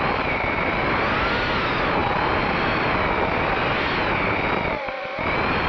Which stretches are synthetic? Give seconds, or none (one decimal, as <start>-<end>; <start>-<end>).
none